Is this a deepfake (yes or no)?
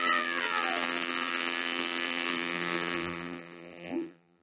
yes